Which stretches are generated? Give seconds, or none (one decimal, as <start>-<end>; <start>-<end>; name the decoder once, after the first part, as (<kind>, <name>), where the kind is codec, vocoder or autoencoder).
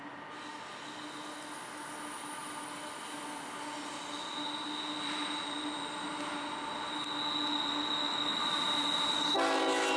none